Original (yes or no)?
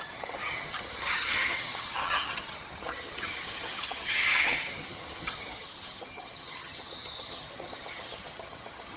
no